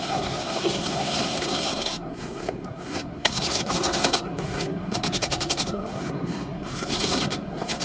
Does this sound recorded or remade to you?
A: remade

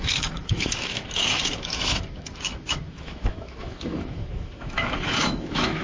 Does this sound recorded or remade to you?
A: remade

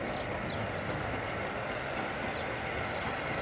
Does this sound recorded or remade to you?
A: recorded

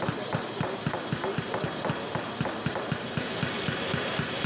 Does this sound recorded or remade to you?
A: recorded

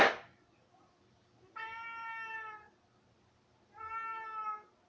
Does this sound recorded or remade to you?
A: recorded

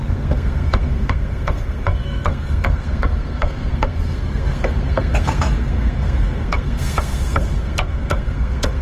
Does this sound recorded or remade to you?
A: remade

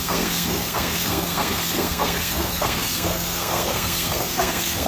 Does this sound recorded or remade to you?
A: remade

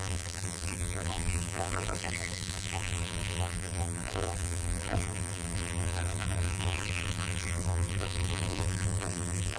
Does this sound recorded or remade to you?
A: remade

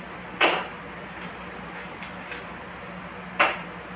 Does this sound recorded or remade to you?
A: recorded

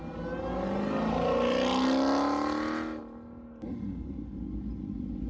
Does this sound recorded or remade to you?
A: recorded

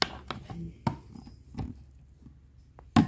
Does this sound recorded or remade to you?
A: recorded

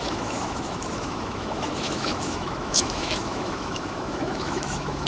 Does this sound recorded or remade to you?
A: remade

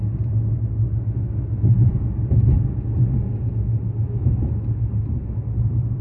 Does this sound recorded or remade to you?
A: recorded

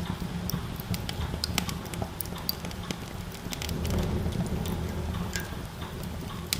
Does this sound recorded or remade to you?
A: recorded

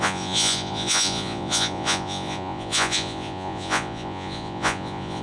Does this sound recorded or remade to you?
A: remade